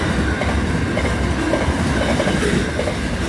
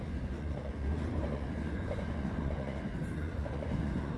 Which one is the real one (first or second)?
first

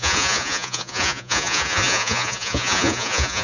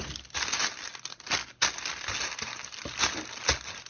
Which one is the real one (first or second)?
second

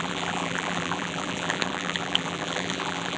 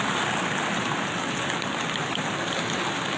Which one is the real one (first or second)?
second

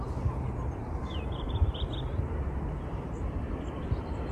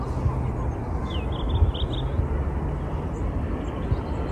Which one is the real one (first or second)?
second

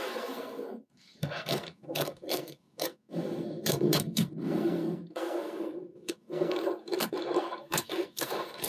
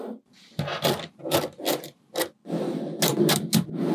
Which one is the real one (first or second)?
second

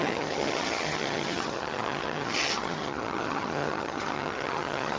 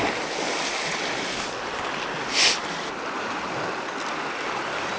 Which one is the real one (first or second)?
second